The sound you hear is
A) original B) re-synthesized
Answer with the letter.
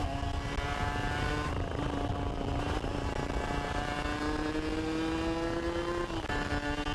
A